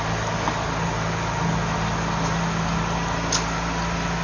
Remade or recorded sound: recorded